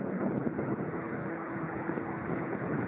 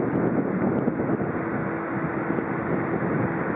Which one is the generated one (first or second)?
first